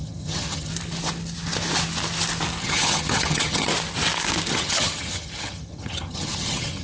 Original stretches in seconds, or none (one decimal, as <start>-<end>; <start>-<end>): 0.7-2.6; 3.7-4.5